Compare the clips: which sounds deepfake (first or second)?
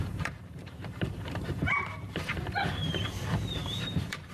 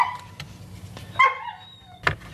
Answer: first